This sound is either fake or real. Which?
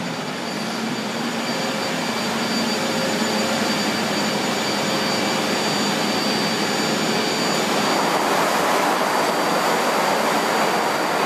real